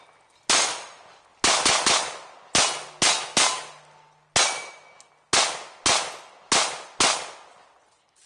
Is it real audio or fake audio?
real